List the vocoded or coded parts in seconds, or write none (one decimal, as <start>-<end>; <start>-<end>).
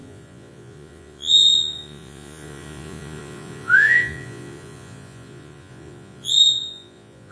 0.0-7.3